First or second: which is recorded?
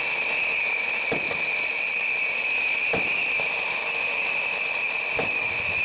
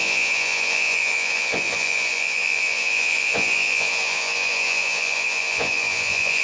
first